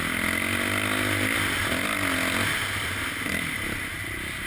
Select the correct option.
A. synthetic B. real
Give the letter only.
B